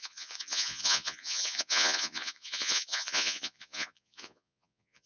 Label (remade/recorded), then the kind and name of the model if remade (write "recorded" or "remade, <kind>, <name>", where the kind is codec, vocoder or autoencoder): remade, vocoder, Vocos